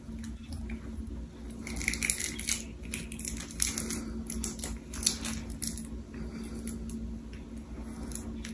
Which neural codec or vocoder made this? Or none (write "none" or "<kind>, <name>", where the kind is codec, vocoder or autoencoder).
none